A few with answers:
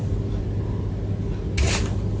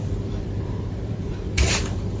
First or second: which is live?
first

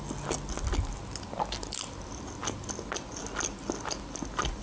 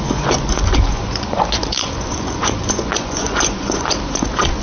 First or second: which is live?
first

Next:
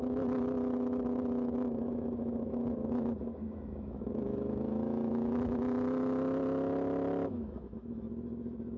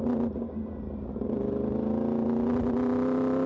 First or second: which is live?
second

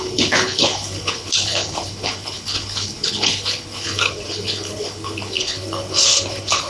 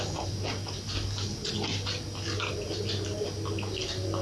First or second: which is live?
second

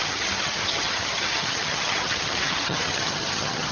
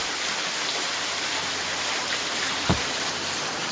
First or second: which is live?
second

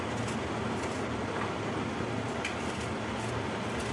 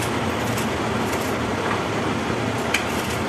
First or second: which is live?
first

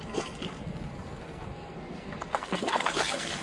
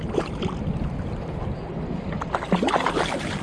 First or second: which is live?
second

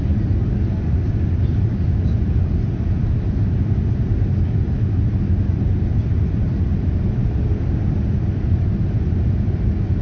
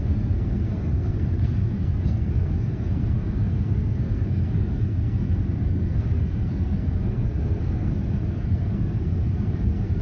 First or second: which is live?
first